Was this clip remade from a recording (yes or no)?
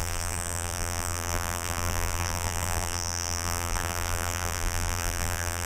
yes